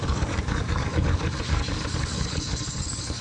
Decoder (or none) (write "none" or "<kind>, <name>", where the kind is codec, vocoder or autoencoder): codec, DAC